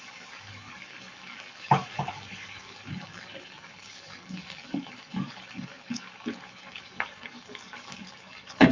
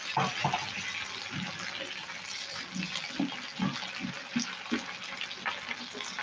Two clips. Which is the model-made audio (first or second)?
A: first